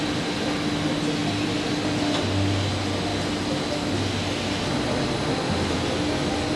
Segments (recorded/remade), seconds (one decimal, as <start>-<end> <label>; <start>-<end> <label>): 0.0-6.6 recorded